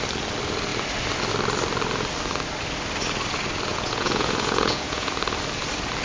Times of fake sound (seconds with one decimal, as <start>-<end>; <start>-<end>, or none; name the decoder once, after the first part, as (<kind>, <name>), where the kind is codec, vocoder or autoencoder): 3.7-5.1 (vocoder, Vocos)